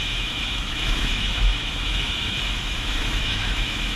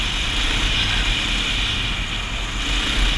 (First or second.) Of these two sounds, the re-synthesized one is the first